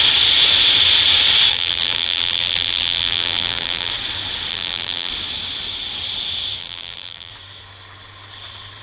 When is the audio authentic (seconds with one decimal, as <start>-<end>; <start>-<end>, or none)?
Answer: 0.0-1.5; 3.9-4.5; 5.1-6.6; 7.3-8.8